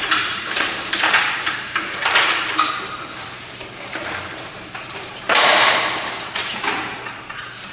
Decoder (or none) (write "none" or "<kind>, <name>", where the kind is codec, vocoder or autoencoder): vocoder, BigVGAN v2